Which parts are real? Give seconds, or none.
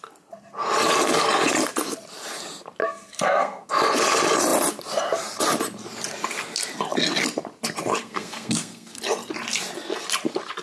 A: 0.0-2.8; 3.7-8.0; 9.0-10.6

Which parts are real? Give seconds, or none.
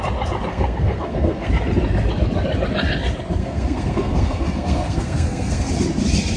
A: 0.0-0.5; 1.5-3.4; 5.7-6.4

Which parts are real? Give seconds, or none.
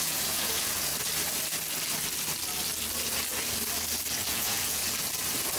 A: 0.9-4.3; 4.8-5.6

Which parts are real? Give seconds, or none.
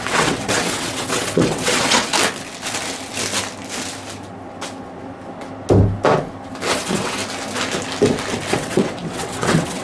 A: 2.1-6.7; 7.2-8.5